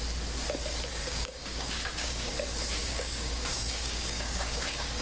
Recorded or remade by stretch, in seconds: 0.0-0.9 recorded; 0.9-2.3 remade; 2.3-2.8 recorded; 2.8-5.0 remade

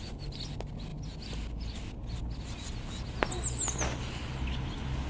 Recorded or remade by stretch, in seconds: 0.0-5.1 recorded

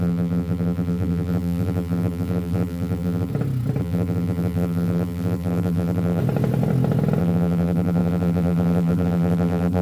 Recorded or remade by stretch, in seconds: 0.0-3.3 remade; 3.3-3.8 recorded; 3.8-6.2 remade; 6.2-7.2 recorded; 7.2-9.8 remade

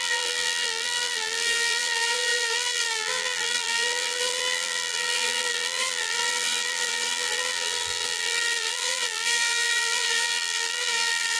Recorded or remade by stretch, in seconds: 0.0-11.4 remade

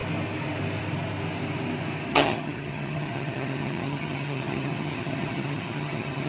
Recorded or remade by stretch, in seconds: 0.0-2.1 recorded; 2.1-6.3 remade